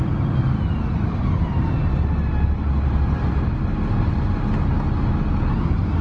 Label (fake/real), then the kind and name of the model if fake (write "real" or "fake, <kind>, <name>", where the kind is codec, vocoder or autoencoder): real